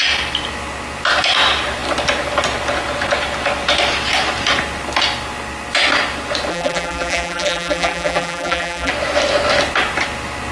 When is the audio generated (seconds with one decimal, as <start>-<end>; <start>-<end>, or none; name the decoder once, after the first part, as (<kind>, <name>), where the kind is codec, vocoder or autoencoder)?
6.5-8.9 (vocoder, BigVGAN v2)